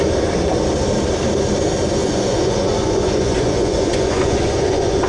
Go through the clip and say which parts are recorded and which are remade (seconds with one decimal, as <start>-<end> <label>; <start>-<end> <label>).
0.0-2.0 recorded; 2.0-5.1 remade